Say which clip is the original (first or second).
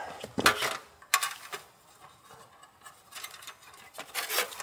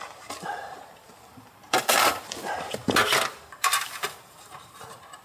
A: first